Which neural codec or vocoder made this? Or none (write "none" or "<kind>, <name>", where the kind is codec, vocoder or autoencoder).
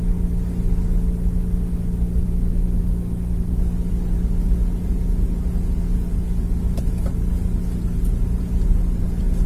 none